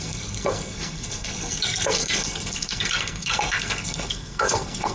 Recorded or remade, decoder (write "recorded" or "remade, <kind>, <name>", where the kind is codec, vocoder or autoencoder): remade, codec, SNAC